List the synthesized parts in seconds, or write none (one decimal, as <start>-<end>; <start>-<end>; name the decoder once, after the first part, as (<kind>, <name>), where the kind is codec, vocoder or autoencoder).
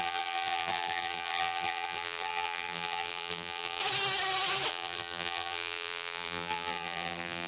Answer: 0.0-3.8 (vocoder, BigVGAN v2); 4.7-7.5